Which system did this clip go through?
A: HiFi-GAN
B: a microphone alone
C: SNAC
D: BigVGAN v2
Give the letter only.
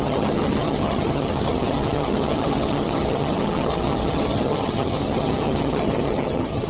A